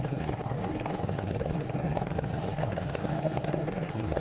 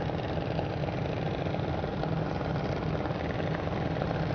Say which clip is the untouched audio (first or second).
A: second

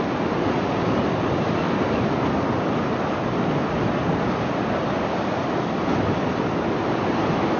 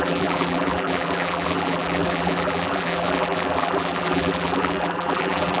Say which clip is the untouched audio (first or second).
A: first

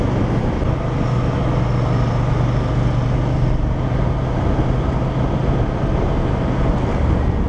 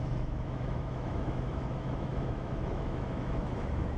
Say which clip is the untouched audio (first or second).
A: first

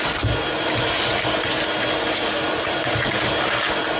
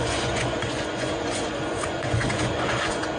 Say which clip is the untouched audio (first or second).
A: first